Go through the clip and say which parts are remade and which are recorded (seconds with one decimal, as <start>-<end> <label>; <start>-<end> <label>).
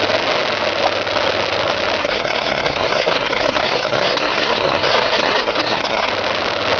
0.0-2.0 recorded; 2.0-6.1 remade; 6.1-6.8 recorded